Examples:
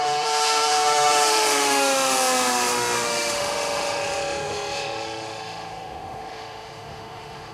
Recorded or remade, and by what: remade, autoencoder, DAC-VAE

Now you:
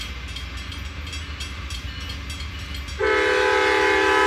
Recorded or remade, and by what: recorded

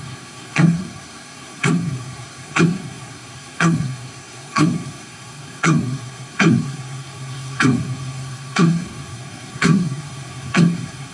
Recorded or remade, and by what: remade, codec, SNAC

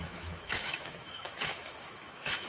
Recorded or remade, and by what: remade, autoencoder, DAC-VAE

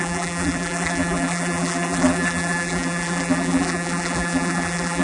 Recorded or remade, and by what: remade, vocoder, BigVGAN v2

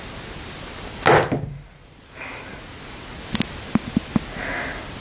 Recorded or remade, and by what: recorded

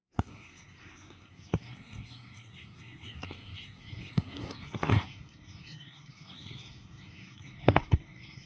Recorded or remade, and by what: remade, codec, SNAC